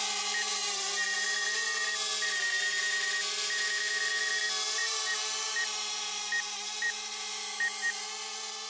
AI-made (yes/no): yes